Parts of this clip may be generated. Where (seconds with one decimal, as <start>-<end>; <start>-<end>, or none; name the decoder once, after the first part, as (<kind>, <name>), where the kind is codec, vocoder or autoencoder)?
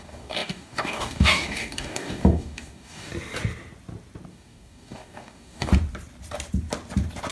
0.0-3.1 (codec, DAC); 4.3-5.7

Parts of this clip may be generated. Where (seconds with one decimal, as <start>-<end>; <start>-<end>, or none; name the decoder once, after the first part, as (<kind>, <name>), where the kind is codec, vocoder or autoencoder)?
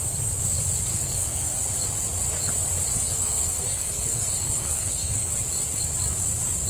0.9-1.6 (codec, SNAC); 2.9-5.3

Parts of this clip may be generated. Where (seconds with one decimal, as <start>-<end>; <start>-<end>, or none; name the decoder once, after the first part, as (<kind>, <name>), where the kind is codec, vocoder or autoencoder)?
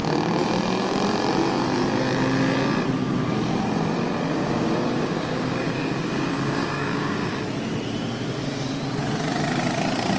4.3-7.4 (codec, DAC)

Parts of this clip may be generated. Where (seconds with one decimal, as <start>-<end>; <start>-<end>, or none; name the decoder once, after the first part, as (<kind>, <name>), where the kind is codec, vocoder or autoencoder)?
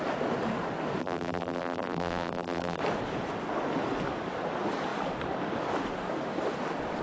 1.0-2.8 (vocoder, BigVGAN v2)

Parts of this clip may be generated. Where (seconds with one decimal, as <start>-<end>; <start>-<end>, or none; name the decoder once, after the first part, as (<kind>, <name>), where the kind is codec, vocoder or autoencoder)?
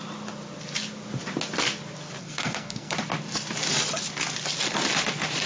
2.2-2.9 (codec, SNAC)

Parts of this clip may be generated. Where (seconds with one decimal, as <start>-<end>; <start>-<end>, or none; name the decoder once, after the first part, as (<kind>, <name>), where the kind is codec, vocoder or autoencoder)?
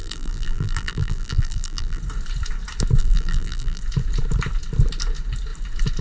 0.0-2.0 (vocoder, BigVGAN v2); 3.0-3.8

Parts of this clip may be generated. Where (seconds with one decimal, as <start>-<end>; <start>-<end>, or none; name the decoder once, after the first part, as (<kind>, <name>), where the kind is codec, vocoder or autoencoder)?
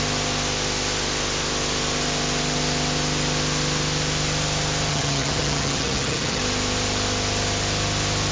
4.9-6.4 (vocoder, HiFi-GAN)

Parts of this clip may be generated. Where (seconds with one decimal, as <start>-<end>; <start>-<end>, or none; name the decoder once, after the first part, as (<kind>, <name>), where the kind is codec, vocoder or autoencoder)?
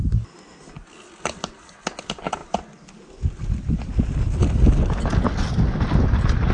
none